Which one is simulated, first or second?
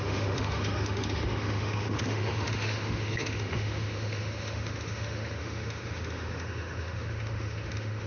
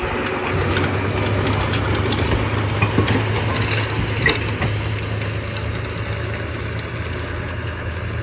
first